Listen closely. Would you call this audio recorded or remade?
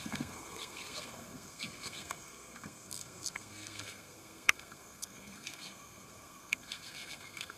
remade